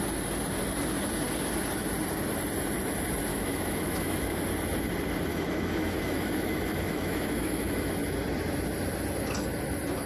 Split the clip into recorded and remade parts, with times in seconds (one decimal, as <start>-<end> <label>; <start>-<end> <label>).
0.0-3.3 recorded; 3.3-4.4 remade; 4.4-5.3 recorded; 5.3-7.9 remade; 7.9-10.1 recorded